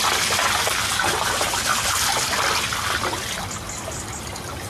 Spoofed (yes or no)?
no